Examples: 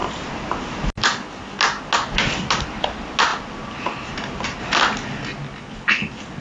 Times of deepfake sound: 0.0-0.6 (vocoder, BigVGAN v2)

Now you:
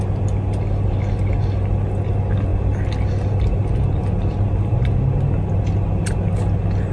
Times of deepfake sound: none

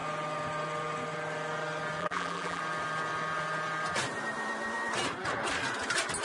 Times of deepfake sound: 2.0-2.6 (vocoder, BigVGAN v2)

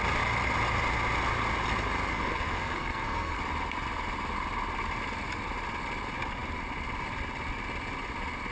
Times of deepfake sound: 2.1-3.4 (codec, SNAC)

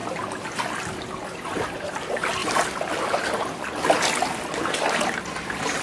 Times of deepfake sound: none

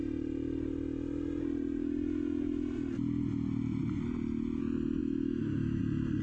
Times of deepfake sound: 5.0-5.8 (autoencoder, DAC-VAE)

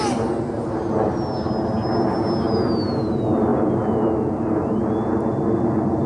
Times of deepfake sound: none

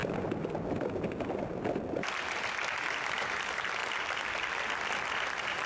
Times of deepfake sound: none